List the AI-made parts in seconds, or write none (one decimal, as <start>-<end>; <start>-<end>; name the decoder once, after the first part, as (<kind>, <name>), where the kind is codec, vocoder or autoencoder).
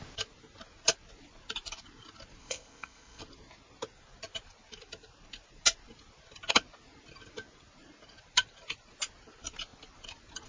2.4-3.2 (codec, ZipCodec)